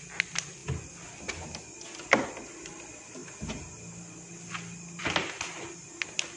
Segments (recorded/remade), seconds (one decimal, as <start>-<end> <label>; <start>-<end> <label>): 0.0-6.4 recorded